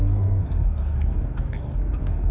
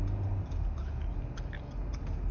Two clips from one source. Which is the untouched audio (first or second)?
second